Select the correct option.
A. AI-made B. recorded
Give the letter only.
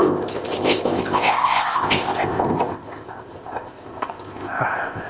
A